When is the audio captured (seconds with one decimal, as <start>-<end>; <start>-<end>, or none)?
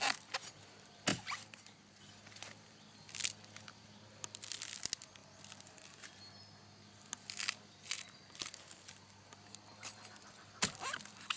0.0-11.4